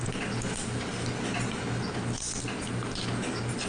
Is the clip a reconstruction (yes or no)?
no